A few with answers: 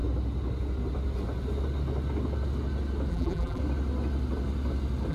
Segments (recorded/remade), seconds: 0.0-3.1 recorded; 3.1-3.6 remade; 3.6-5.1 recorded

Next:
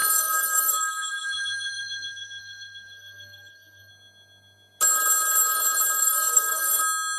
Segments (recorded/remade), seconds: 0.0-3.9 remade; 3.9-6.0 recorded; 6.0-6.7 remade; 6.7-7.2 recorded